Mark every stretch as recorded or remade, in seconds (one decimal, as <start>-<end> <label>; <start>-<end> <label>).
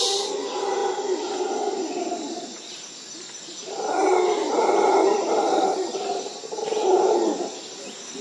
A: 0.0-8.2 recorded